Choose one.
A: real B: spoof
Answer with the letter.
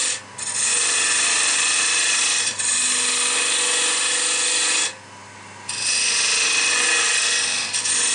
A